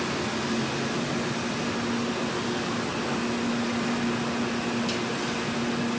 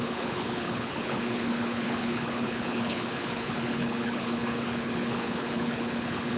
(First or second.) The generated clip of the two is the second